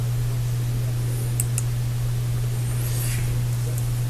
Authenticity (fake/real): real